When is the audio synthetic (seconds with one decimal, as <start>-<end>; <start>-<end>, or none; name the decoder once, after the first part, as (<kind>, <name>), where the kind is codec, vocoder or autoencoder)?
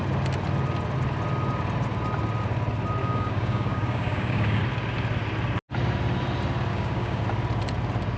3.0-4.6 (codec, DAC); 6.7-7.2